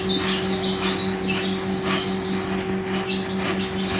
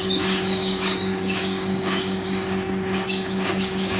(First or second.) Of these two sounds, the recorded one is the first